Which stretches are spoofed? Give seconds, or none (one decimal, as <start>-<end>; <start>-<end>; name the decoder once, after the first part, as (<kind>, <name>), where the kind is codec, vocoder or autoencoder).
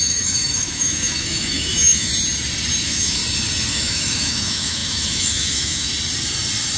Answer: 0.0-2.1 (autoencoder, DAC-VAE); 2.8-3.2; 3.7-5.9